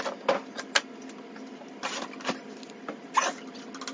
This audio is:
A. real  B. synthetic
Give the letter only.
A